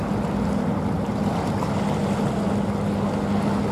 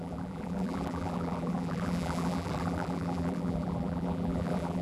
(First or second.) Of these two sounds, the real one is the first